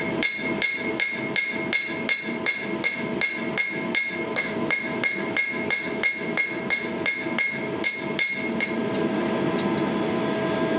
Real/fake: real